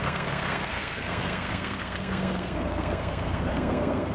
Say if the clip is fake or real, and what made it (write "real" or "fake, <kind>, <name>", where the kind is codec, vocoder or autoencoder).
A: fake, codec, SNAC